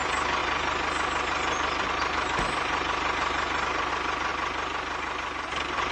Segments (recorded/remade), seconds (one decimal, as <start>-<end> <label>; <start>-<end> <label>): 0.0-0.4 recorded; 0.4-3.9 remade; 3.9-5.9 recorded